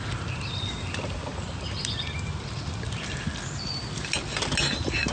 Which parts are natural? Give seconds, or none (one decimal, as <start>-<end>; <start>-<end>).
0.0-5.1

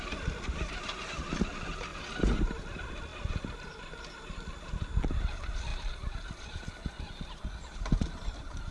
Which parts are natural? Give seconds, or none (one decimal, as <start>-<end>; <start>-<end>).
0.0-8.7

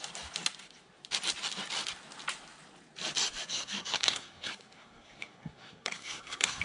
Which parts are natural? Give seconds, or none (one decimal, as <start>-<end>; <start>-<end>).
0.0-3.5

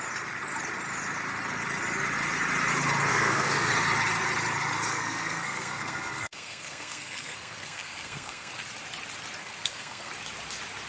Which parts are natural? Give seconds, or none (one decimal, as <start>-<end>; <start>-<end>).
0.0-3.1; 3.7-4.9; 8.5-9.4; 10.1-10.9

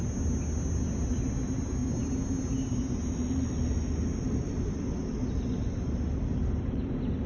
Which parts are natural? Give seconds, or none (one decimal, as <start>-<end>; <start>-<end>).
0.0-7.3

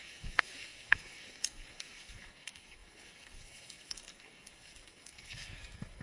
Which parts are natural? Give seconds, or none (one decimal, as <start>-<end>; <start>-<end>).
none

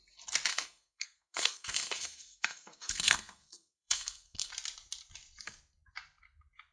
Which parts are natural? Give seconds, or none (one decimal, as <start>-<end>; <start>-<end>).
0.0-0.5; 4.5-6.7

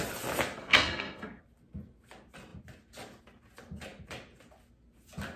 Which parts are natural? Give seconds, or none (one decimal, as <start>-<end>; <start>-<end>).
0.0-0.6; 1.4-5.4